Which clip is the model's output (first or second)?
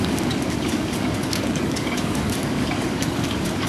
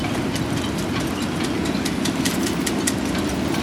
first